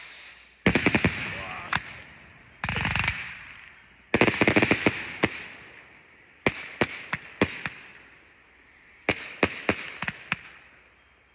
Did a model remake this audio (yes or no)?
no